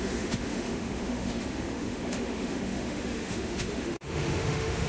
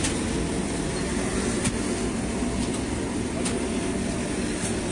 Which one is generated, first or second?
first